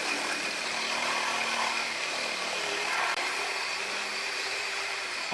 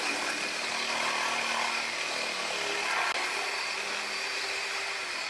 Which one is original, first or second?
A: second